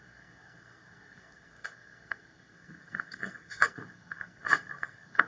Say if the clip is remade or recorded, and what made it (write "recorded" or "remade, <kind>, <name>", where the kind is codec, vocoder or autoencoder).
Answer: remade, codec, SNAC